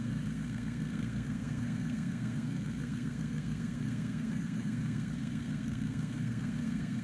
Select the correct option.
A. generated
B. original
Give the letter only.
A